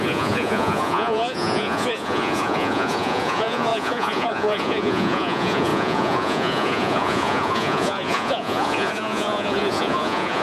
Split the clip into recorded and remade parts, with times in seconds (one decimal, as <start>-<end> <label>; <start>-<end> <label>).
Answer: 0.0-10.4 remade